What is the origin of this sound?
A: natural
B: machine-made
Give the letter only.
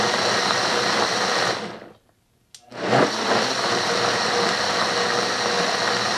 A